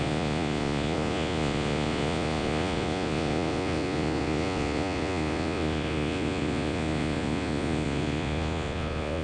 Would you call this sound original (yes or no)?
no